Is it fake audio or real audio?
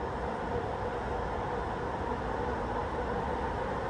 real